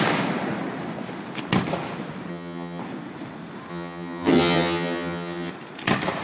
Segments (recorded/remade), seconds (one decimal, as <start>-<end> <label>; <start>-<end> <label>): 0.0-2.3 recorded; 2.3-2.8 remade; 2.8-3.7 recorded; 3.7-5.5 remade; 5.5-6.2 recorded